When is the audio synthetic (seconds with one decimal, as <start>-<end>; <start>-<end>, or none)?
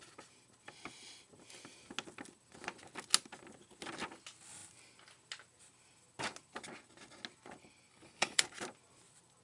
7.9-8.4